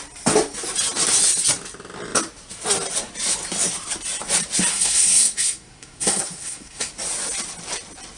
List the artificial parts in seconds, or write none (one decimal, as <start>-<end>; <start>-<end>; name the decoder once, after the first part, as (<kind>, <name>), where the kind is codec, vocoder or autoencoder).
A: 4.7-6.9 (codec, SNAC)